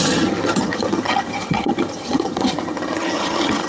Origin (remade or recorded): remade